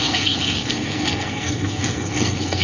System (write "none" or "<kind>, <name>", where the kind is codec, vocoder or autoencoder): codec, SNAC